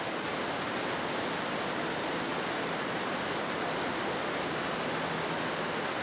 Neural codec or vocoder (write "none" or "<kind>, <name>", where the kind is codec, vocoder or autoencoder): none